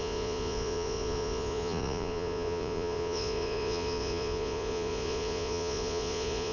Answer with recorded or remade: remade